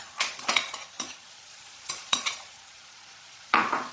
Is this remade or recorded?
remade